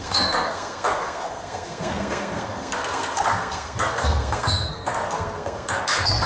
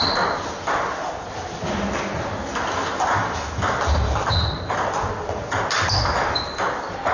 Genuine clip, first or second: second